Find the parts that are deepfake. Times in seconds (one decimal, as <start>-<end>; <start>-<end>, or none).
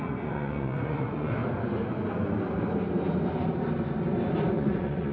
0.0-1.4; 4.5-5.1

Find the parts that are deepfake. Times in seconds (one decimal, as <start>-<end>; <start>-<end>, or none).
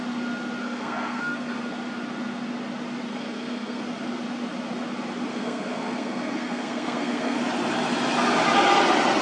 0.6-1.6; 3.1-3.8; 5.3-7.4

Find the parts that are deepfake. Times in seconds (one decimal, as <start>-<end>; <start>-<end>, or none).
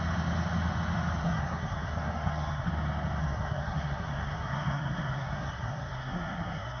1.2-2.7; 3.2-6.8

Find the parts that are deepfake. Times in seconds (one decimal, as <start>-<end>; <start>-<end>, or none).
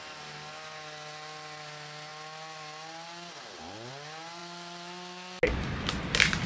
none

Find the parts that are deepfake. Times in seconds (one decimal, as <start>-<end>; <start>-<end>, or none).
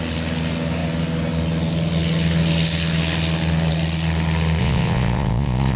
4.6-5.8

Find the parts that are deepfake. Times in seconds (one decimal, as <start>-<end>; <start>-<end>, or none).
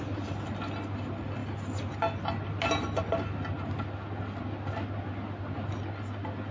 none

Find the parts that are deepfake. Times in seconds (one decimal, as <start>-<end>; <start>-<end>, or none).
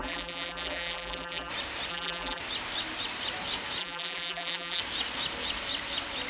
0.0-1.5; 1.9-2.4; 3.8-4.8